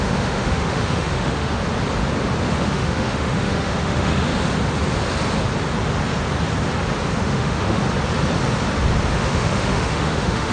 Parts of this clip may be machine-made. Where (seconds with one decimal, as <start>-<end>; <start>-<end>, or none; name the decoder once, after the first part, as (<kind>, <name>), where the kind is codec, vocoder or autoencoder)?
0.0-1.6 (autoencoder, DAC-VAE); 2.5-4.3; 7.1-7.8; 9.1-10.5